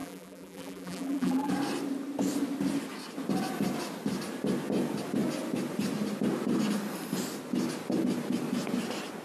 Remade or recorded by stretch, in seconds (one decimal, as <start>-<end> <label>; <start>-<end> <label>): 0.0-1.5 remade; 1.5-9.2 recorded